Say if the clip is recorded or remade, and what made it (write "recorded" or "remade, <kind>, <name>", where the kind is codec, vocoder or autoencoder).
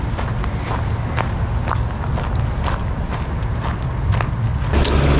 recorded